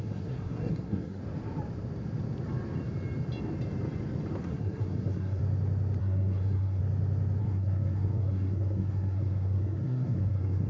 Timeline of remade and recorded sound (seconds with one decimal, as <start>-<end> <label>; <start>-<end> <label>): 0.0-1.2 remade; 1.2-4.4 recorded; 4.4-5.4 remade; 5.4-6.0 recorded; 6.0-6.8 remade; 6.8-7.4 recorded; 7.4-10.7 remade